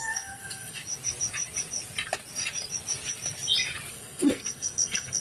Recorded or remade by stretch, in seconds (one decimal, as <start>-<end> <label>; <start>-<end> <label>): 0.0-0.8 remade; 0.8-3.9 recorded; 3.9-5.2 remade